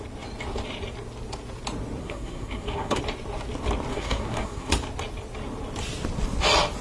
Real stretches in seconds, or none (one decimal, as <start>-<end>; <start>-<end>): 0.0-2.0; 3.0-3.9; 4.7-6.8